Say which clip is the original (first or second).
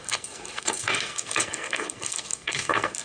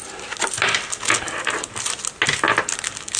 second